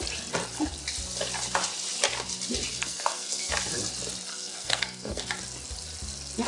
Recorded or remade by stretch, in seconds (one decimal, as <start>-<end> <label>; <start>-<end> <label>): 0.0-2.7 recorded; 2.7-3.5 remade; 3.5-4.3 recorded; 4.3-5.2 remade; 5.2-6.5 recorded